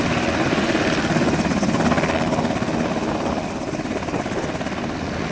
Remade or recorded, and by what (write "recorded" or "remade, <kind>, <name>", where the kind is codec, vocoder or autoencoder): recorded